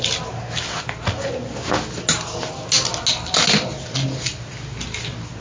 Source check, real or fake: real